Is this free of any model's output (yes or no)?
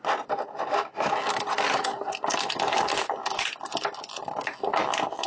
yes